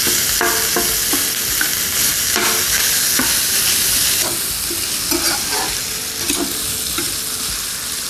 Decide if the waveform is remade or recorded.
recorded